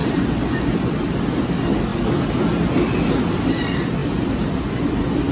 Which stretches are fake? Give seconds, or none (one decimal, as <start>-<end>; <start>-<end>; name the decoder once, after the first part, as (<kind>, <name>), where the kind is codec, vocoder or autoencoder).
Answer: 0.0-1.9 (vocoder, BigVGAN v2); 3.4-5.3